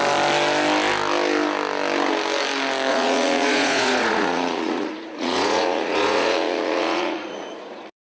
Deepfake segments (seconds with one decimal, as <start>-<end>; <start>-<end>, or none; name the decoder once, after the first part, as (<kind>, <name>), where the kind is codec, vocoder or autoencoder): 2.9-8.1 (vocoder, Vocos)